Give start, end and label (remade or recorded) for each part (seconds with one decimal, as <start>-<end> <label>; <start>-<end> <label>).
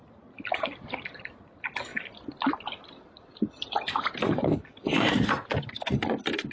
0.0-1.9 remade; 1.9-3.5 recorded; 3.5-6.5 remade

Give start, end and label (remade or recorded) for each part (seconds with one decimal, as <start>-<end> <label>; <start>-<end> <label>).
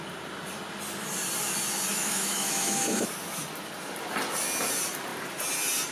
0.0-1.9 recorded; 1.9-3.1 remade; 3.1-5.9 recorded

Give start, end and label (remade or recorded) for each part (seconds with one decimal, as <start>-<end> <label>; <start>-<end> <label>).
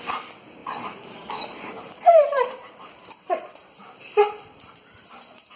0.0-0.6 recorded; 0.6-4.0 remade; 4.0-5.6 recorded